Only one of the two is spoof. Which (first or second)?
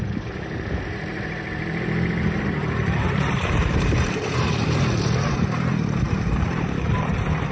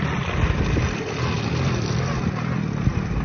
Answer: first